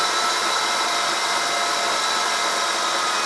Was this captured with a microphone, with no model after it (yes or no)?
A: yes